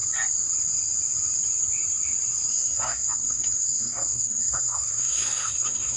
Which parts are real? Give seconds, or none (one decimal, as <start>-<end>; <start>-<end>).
0.0-2.5